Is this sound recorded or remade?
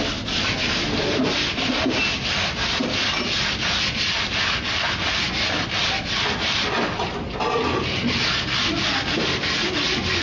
recorded